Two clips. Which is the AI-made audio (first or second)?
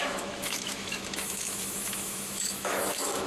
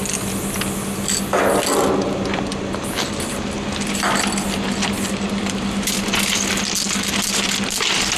first